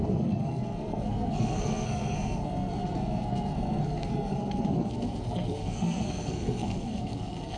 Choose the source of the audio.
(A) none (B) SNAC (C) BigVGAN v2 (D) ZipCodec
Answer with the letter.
B